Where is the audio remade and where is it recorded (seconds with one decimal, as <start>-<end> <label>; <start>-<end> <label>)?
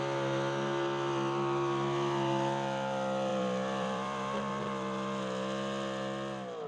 0.0-3.3 recorded; 3.3-4.5 remade; 4.5-6.7 recorded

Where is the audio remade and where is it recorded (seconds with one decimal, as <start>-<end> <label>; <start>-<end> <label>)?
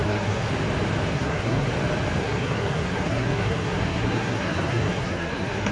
0.0-0.5 remade; 0.5-1.1 recorded; 1.1-1.7 remade; 1.7-2.2 recorded; 2.2-5.7 remade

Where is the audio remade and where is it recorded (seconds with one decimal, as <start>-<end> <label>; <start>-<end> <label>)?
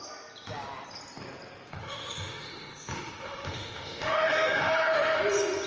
0.0-1.8 recorded; 1.8-5.2 remade; 5.2-5.7 recorded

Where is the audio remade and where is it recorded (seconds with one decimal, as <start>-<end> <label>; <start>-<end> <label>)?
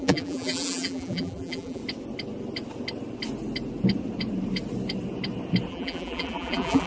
0.0-1.8 remade; 1.8-5.7 recorded; 5.7-6.9 remade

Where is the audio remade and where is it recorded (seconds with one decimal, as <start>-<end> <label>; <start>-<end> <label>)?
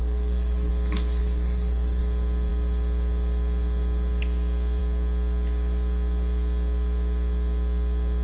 0.0-0.7 remade; 0.7-1.2 recorded; 1.2-2.0 remade; 2.0-8.2 recorded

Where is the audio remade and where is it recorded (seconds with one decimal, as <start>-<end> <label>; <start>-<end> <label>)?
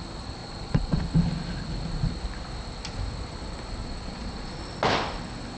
0.0-0.4 recorded; 0.4-1.0 remade; 1.0-3.8 recorded; 3.8-4.6 remade; 4.6-5.6 recorded